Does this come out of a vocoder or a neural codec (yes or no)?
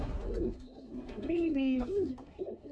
yes